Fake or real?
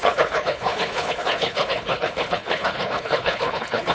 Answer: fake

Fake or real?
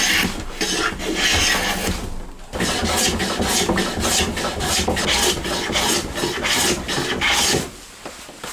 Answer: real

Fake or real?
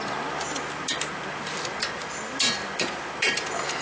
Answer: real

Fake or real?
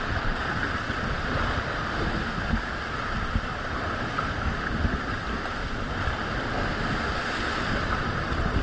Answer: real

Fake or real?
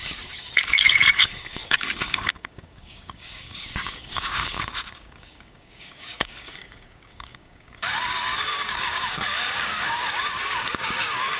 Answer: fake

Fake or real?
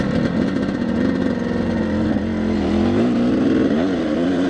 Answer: real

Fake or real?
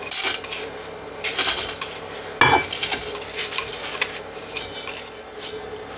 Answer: real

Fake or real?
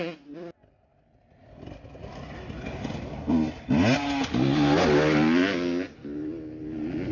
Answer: real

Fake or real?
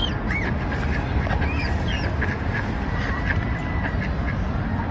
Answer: real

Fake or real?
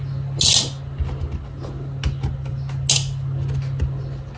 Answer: real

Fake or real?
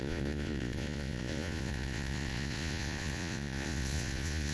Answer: fake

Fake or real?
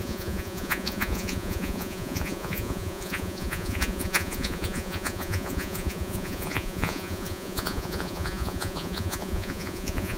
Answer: fake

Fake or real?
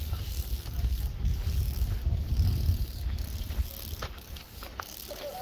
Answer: fake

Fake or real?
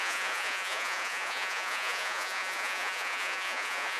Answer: fake